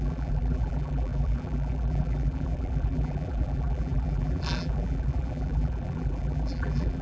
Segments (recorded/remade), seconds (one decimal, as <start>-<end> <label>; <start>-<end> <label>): 0.0-7.0 remade